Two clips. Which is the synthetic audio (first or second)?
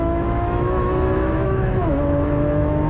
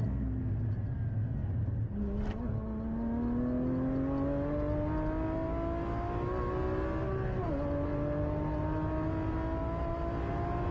first